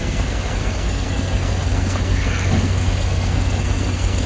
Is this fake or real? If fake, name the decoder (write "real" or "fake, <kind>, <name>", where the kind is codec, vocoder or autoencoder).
fake, codec, SNAC